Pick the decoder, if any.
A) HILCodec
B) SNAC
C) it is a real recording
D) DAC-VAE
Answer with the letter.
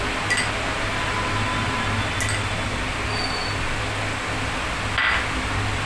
C